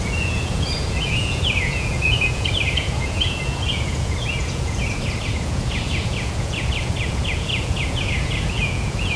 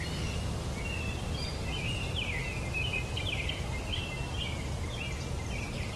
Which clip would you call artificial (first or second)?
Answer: first